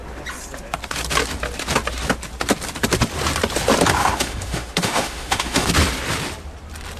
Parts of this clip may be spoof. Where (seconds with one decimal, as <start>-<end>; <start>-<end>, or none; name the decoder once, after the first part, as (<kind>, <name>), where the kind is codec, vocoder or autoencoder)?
4.0-5.7 (autoencoder, DAC-VAE)